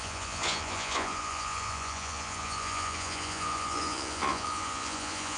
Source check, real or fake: fake